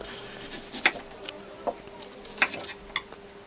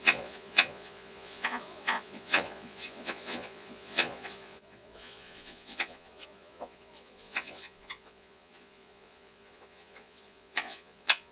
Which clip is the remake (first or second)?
second